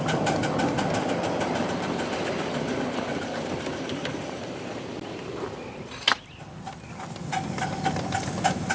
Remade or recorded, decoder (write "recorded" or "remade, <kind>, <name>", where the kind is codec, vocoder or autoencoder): recorded